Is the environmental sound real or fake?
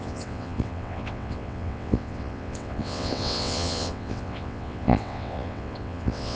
fake